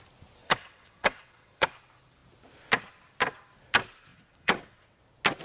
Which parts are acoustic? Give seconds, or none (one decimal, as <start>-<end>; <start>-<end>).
0.0-0.4; 1.7-4.1; 5.0-5.4